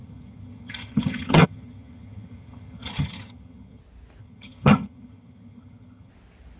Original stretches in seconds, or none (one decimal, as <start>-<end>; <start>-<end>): 3.8-4.2; 6.1-6.6